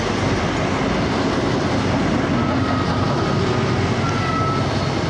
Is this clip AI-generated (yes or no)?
no